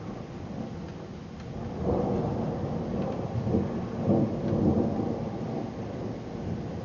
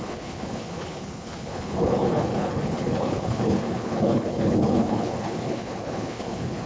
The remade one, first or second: second